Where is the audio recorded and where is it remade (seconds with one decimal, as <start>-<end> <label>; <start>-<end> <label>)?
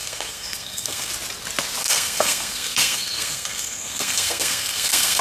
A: 0.0-1.1 remade; 1.1-1.8 recorded; 1.8-5.2 remade